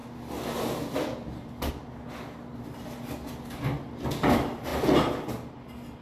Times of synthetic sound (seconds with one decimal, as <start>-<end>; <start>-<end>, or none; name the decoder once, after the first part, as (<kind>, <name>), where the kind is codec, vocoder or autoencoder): none